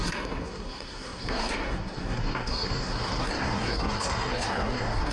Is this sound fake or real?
fake